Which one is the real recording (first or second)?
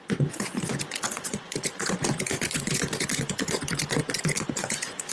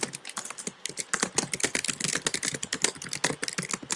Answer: second